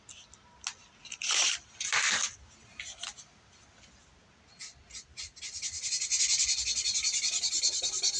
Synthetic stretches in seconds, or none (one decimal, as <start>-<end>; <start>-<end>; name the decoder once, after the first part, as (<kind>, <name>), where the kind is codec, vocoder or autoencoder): 1.0-1.5 (vocoder, BigVGAN v2)